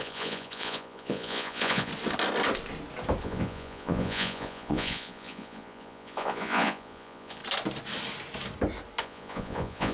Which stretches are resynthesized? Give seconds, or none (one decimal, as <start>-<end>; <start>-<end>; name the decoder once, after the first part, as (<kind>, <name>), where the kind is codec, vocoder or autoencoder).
0.0-1.9 (vocoder, Vocos); 3.2-7.4; 9.0-9.9

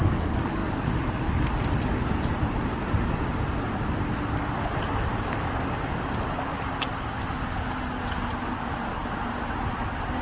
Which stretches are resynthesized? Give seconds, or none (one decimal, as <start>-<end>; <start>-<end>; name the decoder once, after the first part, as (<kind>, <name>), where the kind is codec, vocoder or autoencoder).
none

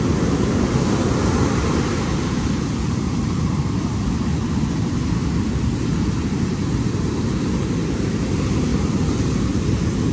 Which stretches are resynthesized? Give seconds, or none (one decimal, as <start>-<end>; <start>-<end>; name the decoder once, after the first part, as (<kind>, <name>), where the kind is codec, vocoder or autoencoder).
8.7-9.6 (vocoder, BigVGAN v2)

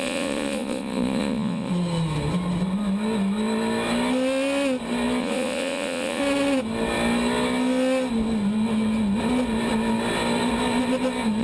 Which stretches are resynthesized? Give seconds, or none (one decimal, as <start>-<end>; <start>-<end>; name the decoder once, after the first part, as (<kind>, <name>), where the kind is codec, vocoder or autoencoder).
0.0-1.7 (vocoder, Vocos); 5.2-6.2